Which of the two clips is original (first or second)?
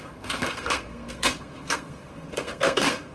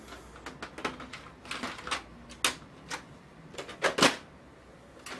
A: second